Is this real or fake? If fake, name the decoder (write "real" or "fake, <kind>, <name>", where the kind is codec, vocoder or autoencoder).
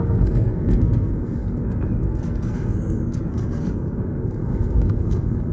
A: fake, codec, SNAC